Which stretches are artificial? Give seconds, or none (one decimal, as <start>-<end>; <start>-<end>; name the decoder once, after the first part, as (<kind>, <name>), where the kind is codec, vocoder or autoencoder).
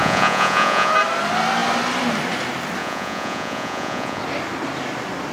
0.0-0.9 (vocoder, Vocos); 2.8-4.2